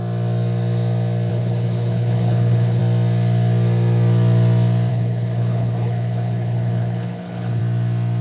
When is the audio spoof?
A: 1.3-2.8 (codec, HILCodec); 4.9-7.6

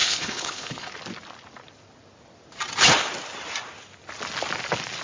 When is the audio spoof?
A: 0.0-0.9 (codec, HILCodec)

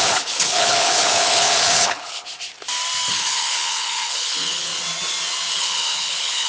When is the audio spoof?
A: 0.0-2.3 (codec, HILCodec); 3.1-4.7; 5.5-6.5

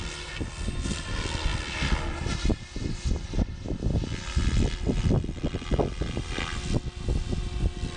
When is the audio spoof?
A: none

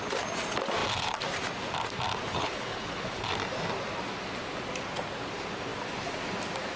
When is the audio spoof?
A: 2.3-3.2 (codec, HILCodec)

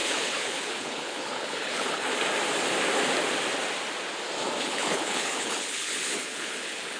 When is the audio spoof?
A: 0.0-2.1 (codec, HILCodec); 4.6-7.0

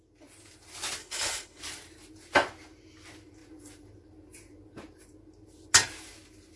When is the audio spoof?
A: 1.0-1.6 (codec, HILCodec)